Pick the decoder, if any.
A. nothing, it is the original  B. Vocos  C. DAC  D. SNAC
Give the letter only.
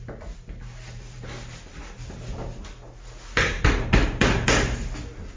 A